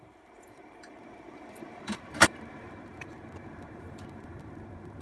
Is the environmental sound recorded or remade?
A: remade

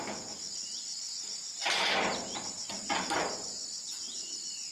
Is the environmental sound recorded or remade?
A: recorded